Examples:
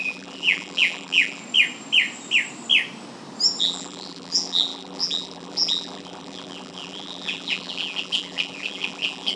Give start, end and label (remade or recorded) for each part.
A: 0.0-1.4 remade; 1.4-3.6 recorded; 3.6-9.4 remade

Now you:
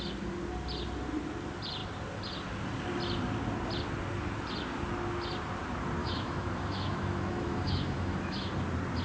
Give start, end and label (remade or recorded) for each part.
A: 0.0-6.0 recorded; 6.0-8.5 remade; 8.5-9.0 recorded

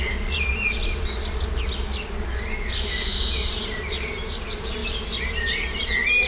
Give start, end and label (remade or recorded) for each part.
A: 0.0-1.6 remade; 1.6-2.7 recorded; 2.7-6.3 remade

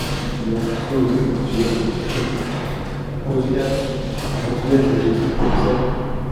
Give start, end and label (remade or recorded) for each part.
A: 0.0-6.3 recorded

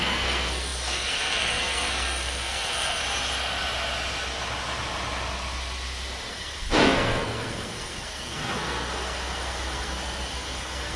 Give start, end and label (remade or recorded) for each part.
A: 0.0-3.0 remade; 3.0-6.3 recorded; 6.3-11.0 remade

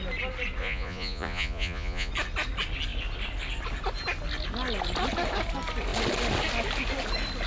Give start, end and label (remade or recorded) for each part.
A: 0.0-0.6 recorded; 0.6-2.1 remade; 2.1-7.5 recorded

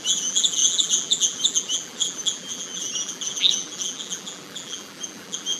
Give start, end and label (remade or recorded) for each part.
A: 0.0-5.6 remade